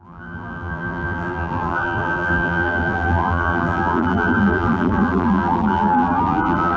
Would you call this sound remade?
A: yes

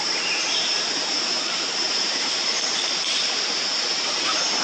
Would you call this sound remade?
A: yes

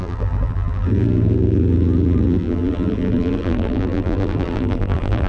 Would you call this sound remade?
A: yes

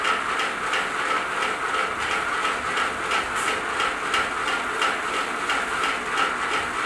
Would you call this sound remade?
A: no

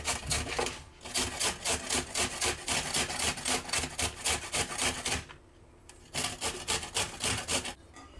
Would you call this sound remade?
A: no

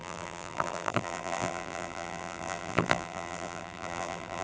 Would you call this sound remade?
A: yes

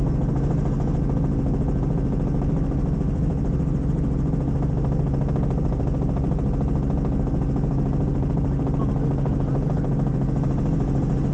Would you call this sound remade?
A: no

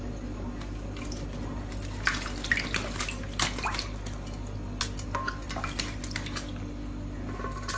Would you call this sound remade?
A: no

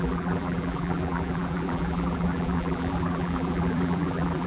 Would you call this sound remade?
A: yes